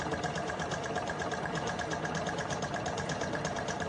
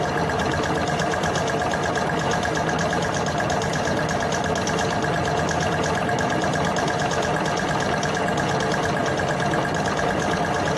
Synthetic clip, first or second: first